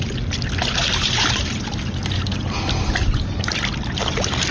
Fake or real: real